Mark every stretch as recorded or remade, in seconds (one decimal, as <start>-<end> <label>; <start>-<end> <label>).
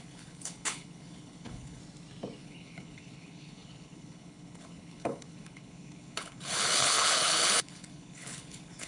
0.0-1.8 remade; 1.8-2.4 recorded; 2.4-8.9 remade